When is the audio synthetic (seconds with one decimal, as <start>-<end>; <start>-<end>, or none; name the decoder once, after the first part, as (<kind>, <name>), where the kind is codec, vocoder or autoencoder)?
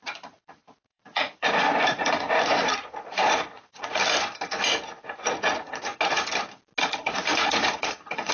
0.0-4.0 (vocoder, Vocos); 5.2-5.9; 6.8-8.3